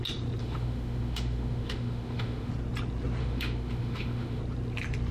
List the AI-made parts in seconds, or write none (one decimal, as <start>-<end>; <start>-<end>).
0.4-2.5; 3.2-4.4